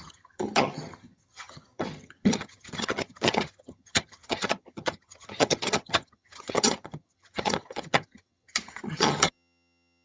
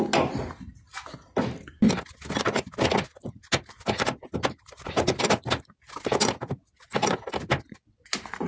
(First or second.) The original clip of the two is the second